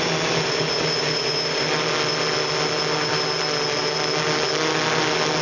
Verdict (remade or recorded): recorded